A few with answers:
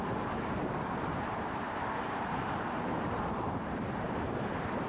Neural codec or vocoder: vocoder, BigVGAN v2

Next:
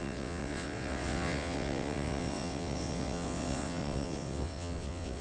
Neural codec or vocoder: vocoder, WaveNeXt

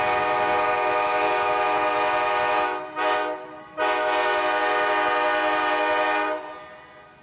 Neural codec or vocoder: none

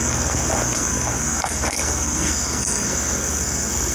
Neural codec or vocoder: codec, SNAC